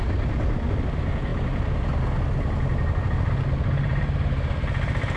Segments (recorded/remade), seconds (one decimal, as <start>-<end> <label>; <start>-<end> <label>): 0.0-5.2 recorded